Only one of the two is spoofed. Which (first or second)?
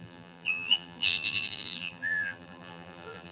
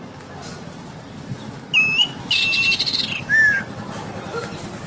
first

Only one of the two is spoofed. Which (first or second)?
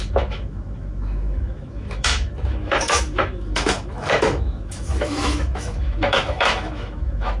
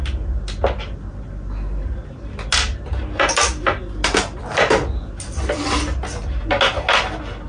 first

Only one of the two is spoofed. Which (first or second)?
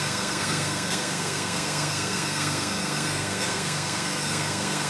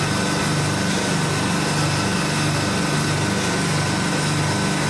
first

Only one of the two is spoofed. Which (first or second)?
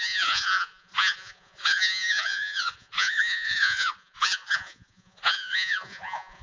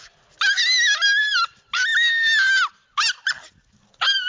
first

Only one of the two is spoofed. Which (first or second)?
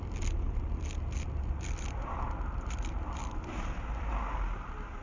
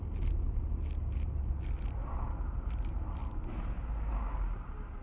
first